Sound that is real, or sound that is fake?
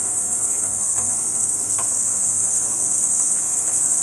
fake